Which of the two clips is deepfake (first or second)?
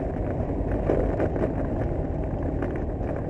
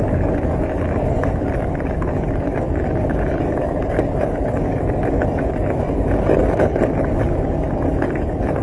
second